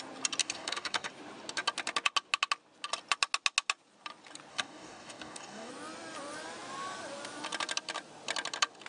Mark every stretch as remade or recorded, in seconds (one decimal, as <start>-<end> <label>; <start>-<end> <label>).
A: 0.0-0.4 recorded; 0.4-1.1 remade; 1.1-4.5 recorded; 4.5-5.7 remade; 5.7-8.9 recorded